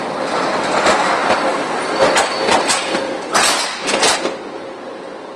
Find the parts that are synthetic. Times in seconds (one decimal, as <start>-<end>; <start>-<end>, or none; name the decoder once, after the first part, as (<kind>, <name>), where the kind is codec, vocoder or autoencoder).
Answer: none